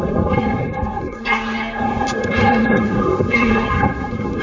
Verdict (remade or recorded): remade